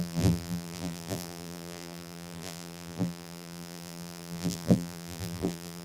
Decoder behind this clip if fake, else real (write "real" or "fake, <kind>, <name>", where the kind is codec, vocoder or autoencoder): fake, vocoder, BigVGAN v2